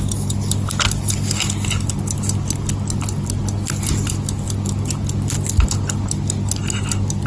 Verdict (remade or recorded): recorded